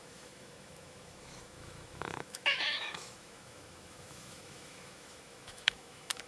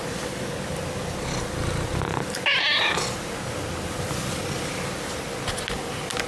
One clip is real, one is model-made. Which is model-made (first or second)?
first